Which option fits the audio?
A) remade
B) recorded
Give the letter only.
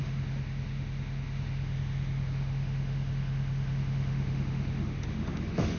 A